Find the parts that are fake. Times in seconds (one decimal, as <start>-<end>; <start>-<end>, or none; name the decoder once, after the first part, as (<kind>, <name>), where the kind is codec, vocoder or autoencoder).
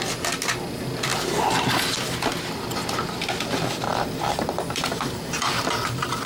3.9-6.3 (vocoder, BigVGAN v2)